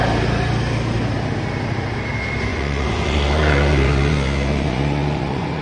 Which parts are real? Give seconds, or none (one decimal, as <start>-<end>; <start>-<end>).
0.0-2.5